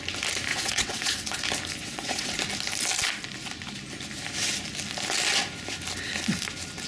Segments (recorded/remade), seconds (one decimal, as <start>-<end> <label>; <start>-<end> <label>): 0.0-0.5 recorded; 0.5-1.4 remade; 1.4-1.8 recorded; 1.8-2.3 remade; 2.3-6.9 recorded